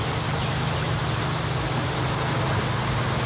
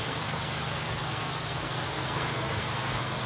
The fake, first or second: second